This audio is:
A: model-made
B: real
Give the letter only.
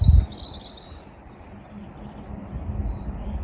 B